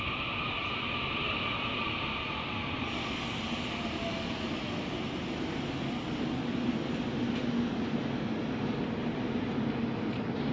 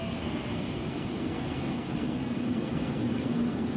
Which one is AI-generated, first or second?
second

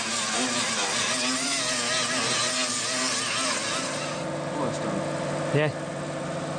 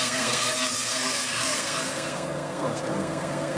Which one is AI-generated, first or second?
second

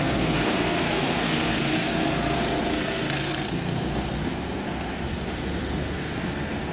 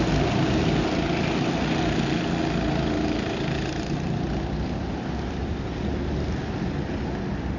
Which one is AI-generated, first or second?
first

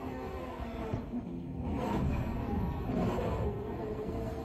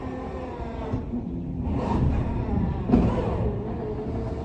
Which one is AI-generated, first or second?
first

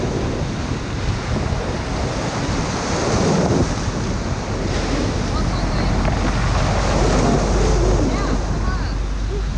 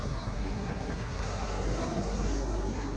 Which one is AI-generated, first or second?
second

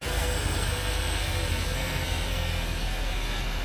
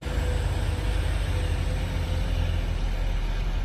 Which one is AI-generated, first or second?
first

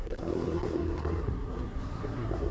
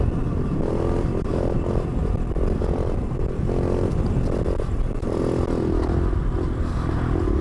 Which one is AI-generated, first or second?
first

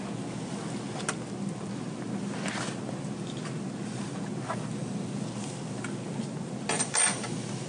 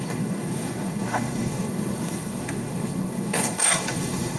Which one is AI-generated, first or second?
second